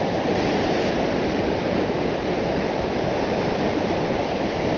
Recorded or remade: remade